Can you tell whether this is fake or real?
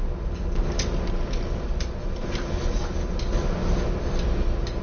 real